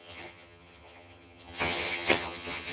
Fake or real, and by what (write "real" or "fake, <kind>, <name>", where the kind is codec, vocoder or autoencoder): fake, vocoder, HiFi-GAN